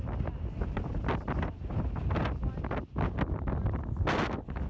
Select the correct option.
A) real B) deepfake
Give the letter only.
A